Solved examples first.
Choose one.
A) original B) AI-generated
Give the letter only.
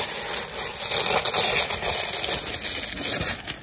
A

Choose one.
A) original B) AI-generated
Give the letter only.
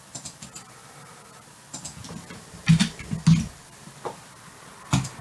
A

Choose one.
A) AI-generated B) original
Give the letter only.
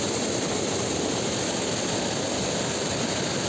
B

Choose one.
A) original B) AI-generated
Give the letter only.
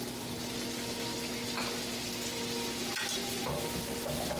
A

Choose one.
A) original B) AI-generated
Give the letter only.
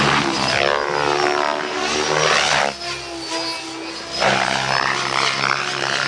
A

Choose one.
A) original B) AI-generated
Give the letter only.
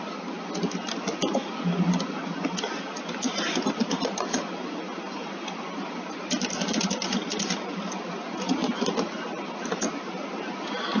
A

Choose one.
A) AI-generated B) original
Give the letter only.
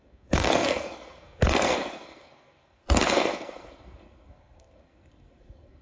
A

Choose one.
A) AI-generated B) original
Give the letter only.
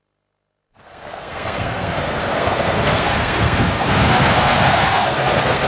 A